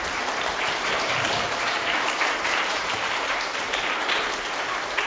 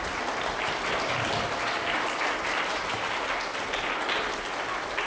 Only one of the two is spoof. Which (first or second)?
first